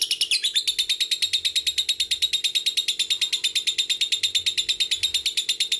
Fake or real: real